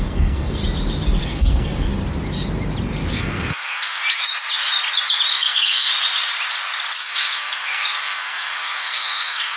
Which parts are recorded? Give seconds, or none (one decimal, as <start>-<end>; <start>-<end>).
0.6-1.2; 1.9-3.1; 4.0-5.3; 5.9-7.0